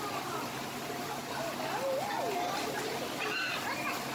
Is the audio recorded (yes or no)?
yes